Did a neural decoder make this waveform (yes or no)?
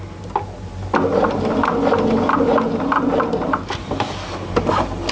no